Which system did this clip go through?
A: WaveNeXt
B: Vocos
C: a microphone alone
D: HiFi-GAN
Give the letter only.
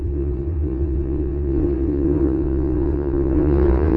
A